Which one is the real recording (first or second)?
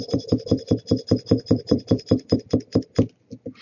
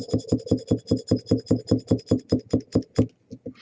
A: second